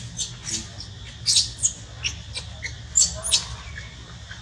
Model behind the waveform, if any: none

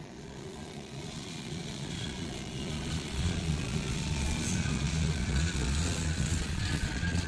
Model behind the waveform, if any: vocoder, Vocos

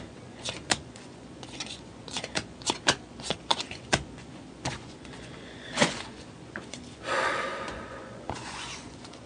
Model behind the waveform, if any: vocoder, Vocos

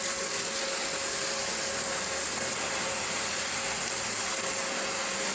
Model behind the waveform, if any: none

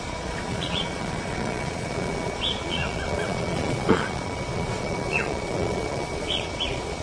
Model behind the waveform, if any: vocoder, Vocos